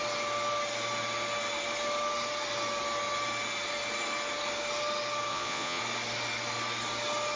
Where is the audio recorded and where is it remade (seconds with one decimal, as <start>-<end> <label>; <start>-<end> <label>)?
0.0-5.3 recorded; 5.3-5.8 remade; 5.8-7.4 recorded